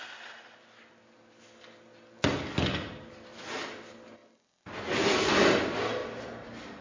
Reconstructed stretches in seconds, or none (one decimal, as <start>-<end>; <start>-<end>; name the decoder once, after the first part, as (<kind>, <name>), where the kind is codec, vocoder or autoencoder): none